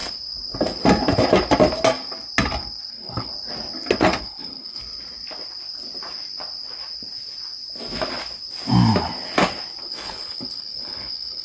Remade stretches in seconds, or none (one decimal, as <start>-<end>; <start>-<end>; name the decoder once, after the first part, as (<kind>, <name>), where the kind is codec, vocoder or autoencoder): 2.9-3.3 (codec, HILCodec); 4.2-4.8; 9.8-11.4